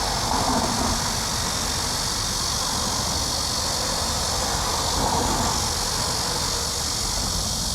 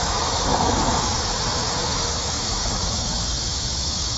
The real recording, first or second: first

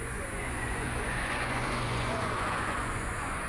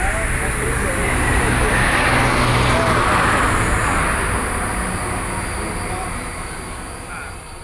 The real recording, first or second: second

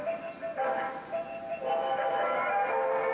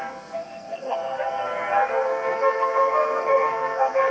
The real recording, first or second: first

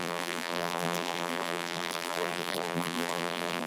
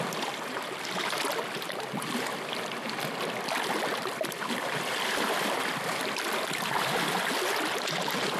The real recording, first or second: second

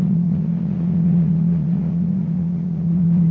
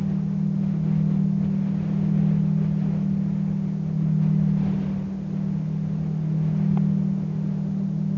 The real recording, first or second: second